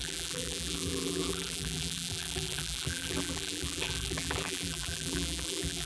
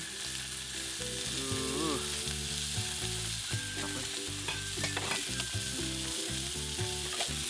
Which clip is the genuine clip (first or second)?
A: second